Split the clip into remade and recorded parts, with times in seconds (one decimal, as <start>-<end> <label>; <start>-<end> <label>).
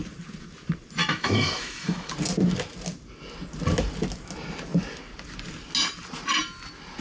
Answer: 0.0-1.0 recorded; 1.0-2.1 remade; 2.1-7.0 recorded